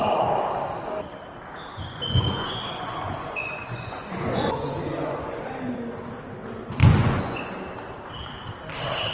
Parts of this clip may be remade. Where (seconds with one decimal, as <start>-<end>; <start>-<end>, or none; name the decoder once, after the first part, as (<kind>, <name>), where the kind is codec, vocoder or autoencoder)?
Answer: 1.7-5.5 (vocoder, Vocos); 6.8-7.5

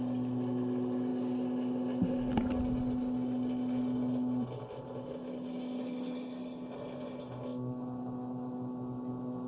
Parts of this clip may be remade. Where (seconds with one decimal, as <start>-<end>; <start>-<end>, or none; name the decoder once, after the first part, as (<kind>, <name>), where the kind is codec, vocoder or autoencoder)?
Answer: none

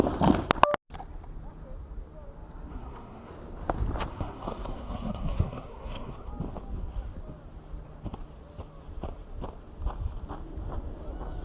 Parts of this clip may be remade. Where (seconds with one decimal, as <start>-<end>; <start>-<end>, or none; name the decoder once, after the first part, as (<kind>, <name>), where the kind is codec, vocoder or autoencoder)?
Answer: 2.7-3.3 (codec, SNAC); 4.1-6.3

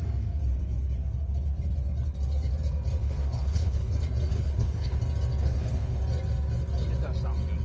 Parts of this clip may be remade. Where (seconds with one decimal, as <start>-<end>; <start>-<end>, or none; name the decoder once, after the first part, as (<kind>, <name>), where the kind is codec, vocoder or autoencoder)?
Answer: 3.0-3.9 (codec, HILCodec); 4.3-5.0; 5.4-6.0

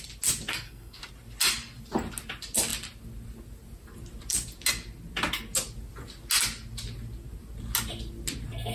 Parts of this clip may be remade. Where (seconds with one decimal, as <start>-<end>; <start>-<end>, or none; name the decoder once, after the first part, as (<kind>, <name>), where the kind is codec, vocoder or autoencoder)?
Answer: 0.5-1.0 (codec, SNAC)

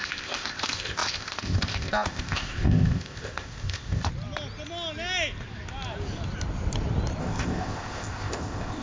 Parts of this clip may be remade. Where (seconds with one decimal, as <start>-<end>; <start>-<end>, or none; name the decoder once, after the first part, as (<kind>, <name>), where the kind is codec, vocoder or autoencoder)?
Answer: 0.0-4.1 (codec, ZipCodec); 7.2-8.8